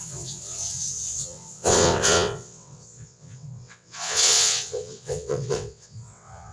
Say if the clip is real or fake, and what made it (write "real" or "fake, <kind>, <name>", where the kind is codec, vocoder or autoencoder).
fake, vocoder, WaveNeXt